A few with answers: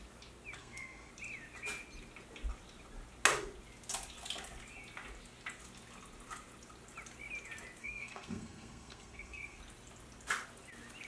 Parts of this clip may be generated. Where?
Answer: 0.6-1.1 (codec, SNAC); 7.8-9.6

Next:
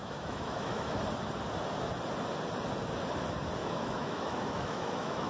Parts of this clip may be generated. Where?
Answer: 0.0-1.0 (autoencoder, DAC-VAE); 3.6-5.3

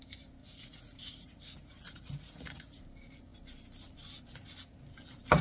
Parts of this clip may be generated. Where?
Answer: 0.4-2.8 (vocoder, Vocos)

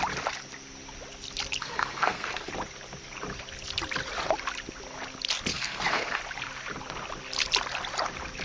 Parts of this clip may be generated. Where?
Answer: 1.6-2.5 (codec, SNAC); 5.5-6.2